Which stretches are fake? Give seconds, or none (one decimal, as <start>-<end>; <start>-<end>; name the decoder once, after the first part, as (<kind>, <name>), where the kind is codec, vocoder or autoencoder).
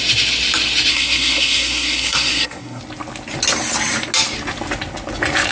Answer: 0.9-2.8 (codec, SNAC)